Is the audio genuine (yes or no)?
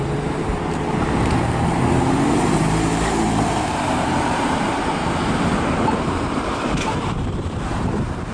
no